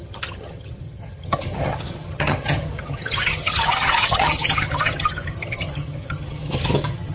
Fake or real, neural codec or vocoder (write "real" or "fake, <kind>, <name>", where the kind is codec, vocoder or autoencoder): fake, vocoder, HiFi-GAN